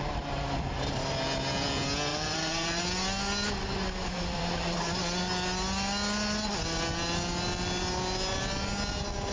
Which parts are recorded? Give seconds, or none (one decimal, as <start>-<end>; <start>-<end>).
0.0-2.1; 2.8-4.0; 4.9-9.3